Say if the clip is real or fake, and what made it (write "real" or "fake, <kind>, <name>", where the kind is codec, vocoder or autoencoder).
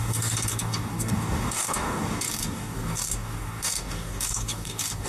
fake, codec, DAC